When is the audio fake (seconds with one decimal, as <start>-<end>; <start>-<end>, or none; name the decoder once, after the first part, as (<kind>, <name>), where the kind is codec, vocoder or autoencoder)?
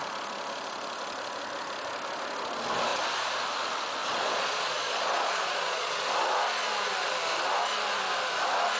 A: 4.0-5.9 (vocoder, Vocos)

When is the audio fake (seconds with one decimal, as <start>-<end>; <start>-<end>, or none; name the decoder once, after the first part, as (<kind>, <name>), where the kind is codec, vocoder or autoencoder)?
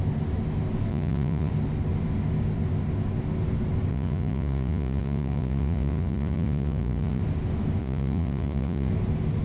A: 0.9-1.5 (vocoder, Vocos); 3.9-7.2; 7.8-8.9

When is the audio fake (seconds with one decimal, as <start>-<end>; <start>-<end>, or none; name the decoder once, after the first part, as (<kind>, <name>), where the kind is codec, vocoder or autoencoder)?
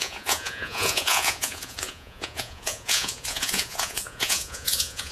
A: 0.0-5.1 (vocoder, Vocos)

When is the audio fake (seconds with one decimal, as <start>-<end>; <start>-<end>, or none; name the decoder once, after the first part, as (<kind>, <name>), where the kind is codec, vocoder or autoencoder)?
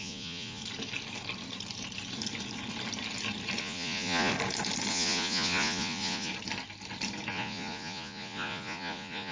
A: 0.0-0.6 (vocoder, Vocos); 3.6-4.3; 4.9-6.3; 7.3-9.3